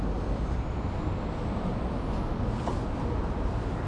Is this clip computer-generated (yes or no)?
no